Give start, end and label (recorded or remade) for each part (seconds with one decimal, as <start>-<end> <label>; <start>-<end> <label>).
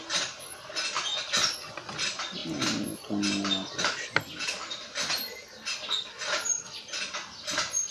0.0-7.9 recorded